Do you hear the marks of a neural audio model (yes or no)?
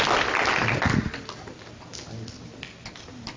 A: no